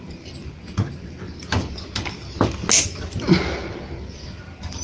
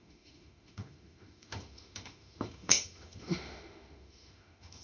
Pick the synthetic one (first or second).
second